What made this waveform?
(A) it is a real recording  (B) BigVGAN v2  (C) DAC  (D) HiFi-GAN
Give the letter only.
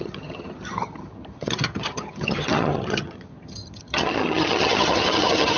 D